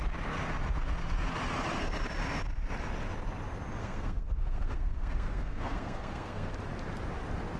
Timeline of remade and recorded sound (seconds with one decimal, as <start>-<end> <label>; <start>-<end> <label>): 0.0-3.8 recorded; 3.8-6.5 remade; 6.5-7.6 recorded